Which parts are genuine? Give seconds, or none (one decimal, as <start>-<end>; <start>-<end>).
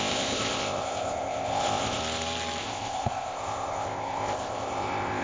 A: 2.0-2.6